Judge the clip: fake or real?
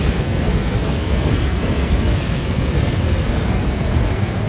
fake